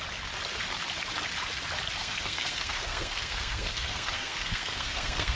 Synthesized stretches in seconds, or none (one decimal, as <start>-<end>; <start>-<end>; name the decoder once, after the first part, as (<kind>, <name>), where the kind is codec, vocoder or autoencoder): 2.0-5.4 (codec, SNAC)